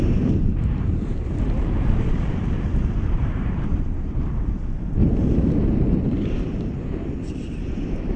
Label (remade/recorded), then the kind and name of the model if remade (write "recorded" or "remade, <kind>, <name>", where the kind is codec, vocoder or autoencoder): remade, vocoder, BigVGAN v2